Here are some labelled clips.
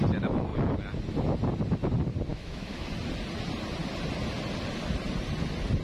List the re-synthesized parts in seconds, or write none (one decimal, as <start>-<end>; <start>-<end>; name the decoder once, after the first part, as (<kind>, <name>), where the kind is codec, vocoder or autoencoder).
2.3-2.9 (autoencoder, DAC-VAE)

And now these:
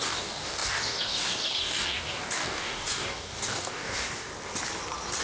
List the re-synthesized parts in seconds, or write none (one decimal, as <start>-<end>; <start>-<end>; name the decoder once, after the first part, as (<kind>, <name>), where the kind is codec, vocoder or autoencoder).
0.0-4.3 (codec, DAC)

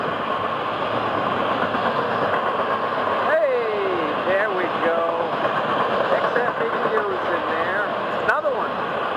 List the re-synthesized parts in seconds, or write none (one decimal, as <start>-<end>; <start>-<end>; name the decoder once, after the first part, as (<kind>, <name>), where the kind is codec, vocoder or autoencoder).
none